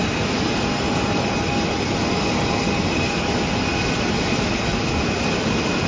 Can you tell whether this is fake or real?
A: real